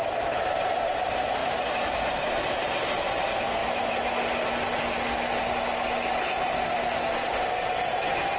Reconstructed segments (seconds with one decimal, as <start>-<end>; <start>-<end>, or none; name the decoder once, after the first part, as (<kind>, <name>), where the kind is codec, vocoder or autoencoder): none